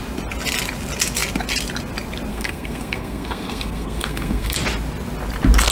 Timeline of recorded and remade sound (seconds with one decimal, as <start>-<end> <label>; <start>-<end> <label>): 0.0-2.3 recorded; 2.3-4.6 remade; 4.6-5.7 recorded